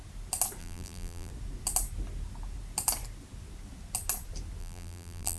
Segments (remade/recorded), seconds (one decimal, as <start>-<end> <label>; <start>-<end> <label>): 0.0-0.6 recorded; 0.6-1.3 remade; 1.3-4.6 recorded; 4.6-5.4 remade